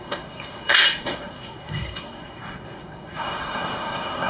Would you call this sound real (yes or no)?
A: no